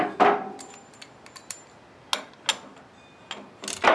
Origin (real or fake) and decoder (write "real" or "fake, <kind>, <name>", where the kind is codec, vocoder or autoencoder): real